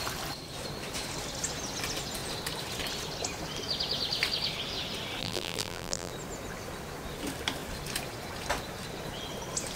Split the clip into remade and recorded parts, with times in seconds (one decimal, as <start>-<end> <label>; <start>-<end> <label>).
0.0-5.2 recorded; 5.2-6.1 remade; 6.1-9.8 recorded